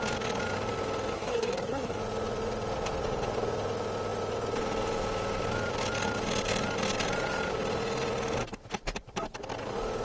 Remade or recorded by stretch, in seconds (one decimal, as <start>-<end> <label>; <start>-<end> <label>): 0.0-1.1 recorded; 1.1-2.0 remade; 2.0-10.0 recorded